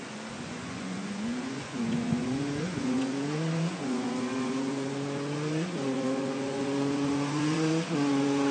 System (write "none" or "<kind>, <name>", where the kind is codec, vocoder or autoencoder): vocoder, Vocos